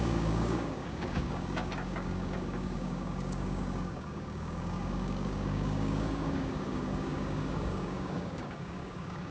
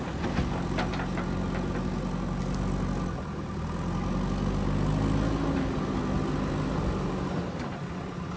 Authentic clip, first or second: second